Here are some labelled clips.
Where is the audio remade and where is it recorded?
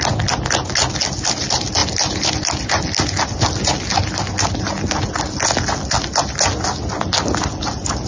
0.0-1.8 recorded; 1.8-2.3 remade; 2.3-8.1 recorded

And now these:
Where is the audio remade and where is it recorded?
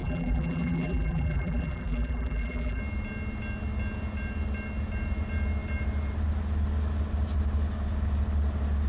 0.0-2.8 remade; 2.8-8.9 recorded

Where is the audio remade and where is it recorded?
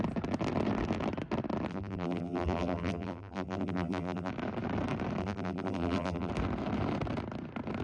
0.0-1.7 recorded; 1.7-4.3 remade; 4.3-5.2 recorded; 5.2-6.3 remade; 6.3-7.8 recorded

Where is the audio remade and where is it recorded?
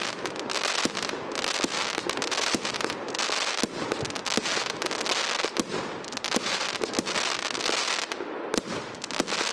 0.0-5.7 recorded; 5.7-6.8 remade; 6.8-9.5 recorded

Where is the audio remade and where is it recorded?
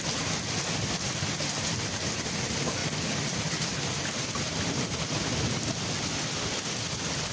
0.0-7.3 recorded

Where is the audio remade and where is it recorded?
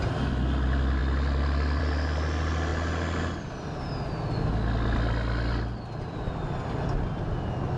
0.0-7.8 recorded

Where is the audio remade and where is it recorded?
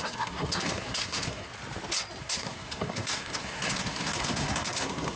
0.0-1.5 remade; 1.5-2.2 recorded; 2.2-5.2 remade